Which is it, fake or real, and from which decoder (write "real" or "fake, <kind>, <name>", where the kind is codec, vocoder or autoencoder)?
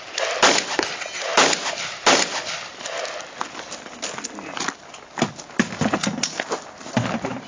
real